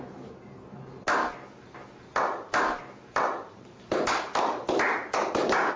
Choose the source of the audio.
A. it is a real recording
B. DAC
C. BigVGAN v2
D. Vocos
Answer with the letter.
A